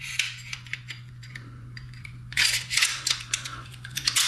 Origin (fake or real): fake